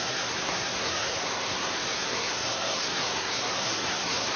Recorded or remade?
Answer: remade